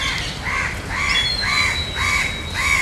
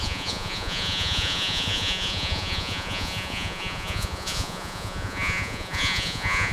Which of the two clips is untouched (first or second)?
first